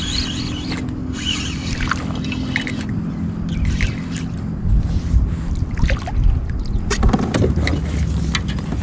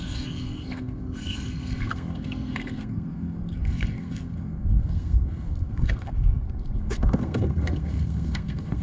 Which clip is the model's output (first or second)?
second